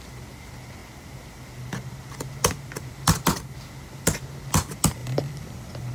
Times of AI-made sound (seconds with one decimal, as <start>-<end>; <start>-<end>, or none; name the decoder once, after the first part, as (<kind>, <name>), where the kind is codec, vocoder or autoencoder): 5.0-5.9 (vocoder, BigVGAN v2)